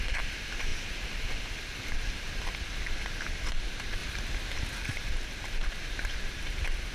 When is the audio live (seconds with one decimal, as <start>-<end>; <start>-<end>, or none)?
0.7-3.3; 4.0-4.8